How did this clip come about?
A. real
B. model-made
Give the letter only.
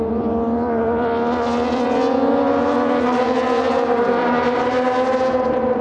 A